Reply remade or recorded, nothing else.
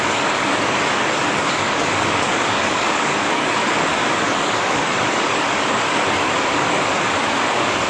remade